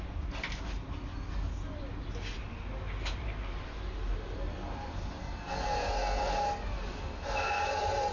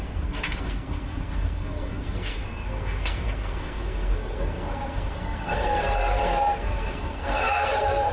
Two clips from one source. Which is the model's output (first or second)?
second